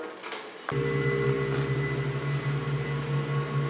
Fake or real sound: real